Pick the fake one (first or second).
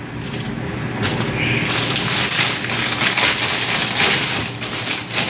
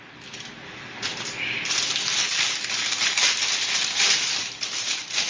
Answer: second